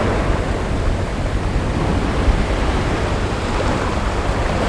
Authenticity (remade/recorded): remade